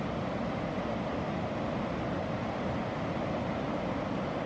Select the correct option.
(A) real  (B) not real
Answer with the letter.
A